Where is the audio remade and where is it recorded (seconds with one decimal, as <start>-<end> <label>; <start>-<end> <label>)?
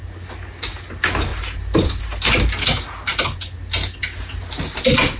0.0-5.2 recorded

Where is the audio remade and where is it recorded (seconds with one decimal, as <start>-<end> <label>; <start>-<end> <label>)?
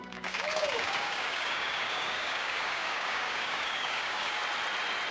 0.0-4.4 remade; 4.4-5.1 recorded